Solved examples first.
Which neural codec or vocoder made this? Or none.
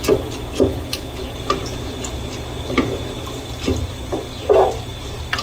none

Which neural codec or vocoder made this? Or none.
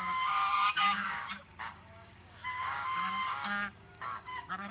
codec, DAC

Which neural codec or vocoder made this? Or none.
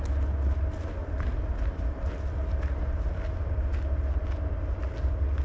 none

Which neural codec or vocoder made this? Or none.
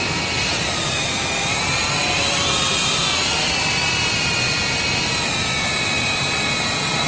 none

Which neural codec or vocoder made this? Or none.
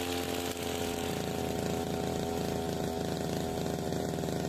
none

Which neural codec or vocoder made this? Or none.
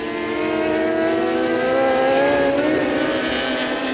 none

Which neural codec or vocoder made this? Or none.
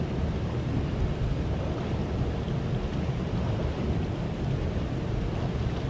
none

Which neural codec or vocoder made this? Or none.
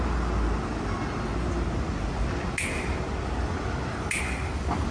none